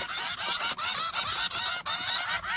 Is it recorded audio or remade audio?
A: recorded